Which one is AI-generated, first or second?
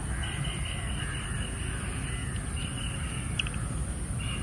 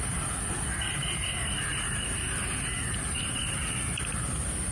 second